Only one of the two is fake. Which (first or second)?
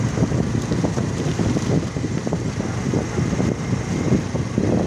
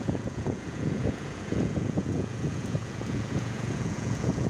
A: second